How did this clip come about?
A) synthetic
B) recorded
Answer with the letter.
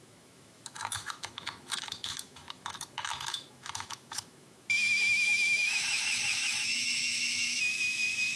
A